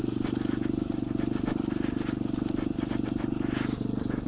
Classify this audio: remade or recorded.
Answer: recorded